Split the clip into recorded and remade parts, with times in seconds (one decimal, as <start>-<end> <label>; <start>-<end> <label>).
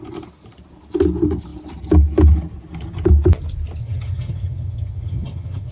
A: 0.0-3.8 recorded; 3.8-5.7 remade